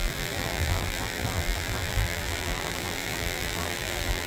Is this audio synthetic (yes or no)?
yes